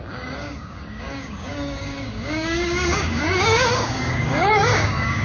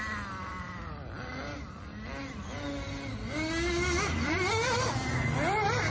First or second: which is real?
second